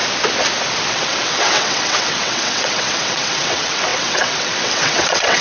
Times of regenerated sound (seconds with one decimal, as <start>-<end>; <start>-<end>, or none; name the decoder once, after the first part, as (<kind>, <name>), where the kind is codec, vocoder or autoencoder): 0.9-5.4 (vocoder, WaveNeXt)